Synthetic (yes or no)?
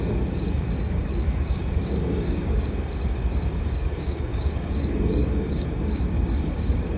yes